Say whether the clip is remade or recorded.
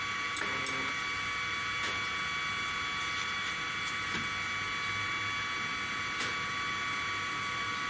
recorded